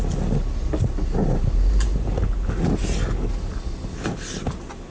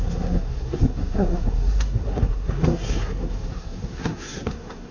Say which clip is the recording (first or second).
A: first